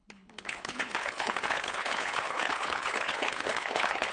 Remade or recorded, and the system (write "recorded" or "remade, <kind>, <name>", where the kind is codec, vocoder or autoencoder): remade, codec, HILCodec